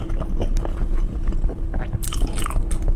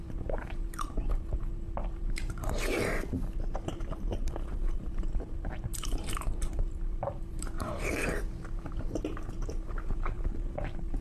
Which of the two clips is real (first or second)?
first